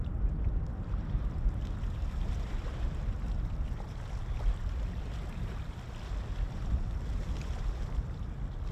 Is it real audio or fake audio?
real